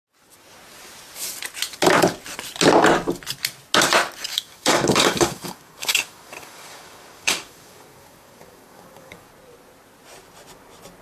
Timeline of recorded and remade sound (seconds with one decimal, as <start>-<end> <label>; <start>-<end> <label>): 0.0-4.3 recorded; 4.3-9.3 remade; 9.3-11.0 recorded